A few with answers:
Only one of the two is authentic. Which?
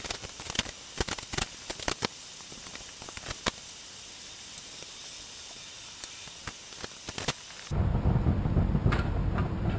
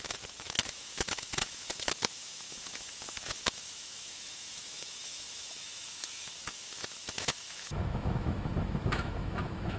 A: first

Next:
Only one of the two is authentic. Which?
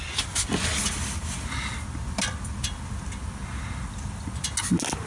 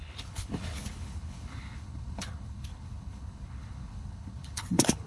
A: first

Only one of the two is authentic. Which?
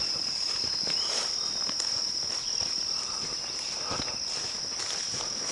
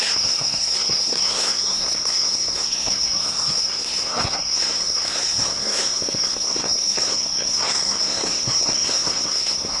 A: first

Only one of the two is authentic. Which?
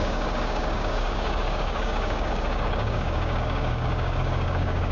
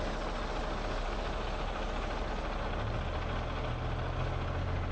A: second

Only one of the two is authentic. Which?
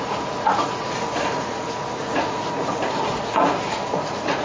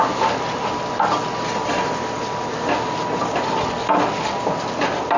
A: second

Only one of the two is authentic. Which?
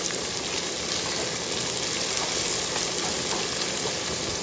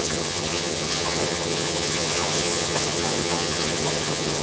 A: first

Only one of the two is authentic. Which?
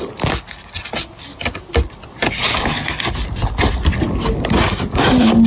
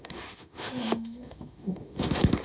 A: first